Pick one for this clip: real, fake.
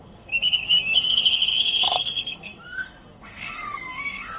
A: fake